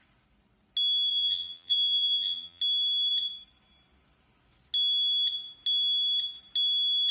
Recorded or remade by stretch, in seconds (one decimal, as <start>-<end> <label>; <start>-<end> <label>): 0.0-1.1 recorded; 1.1-2.6 remade; 2.6-7.1 recorded